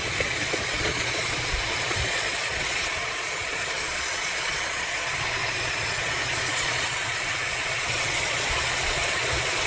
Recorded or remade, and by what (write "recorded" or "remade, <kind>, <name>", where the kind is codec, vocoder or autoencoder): remade, vocoder, Vocos